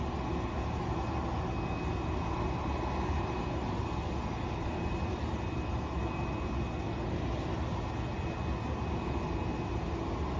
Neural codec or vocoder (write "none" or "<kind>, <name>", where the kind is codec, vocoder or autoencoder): none